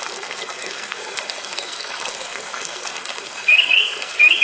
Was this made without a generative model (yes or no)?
no